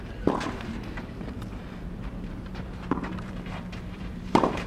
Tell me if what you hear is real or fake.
fake